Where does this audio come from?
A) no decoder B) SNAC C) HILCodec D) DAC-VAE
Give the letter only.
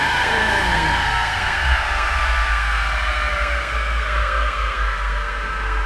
B